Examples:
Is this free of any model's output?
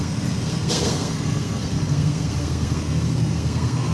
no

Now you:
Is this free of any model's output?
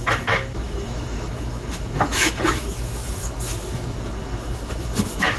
no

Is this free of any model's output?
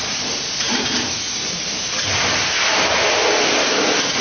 yes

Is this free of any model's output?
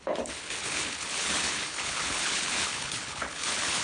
no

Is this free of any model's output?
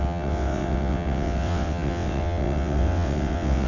no